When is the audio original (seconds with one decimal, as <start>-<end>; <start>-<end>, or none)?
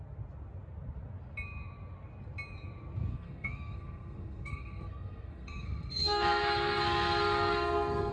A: 0.0-3.1